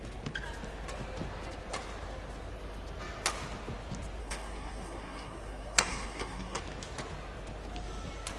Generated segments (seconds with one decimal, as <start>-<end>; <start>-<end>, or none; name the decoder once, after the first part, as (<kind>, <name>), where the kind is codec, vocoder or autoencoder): 4.2-6.6 (codec, SNAC)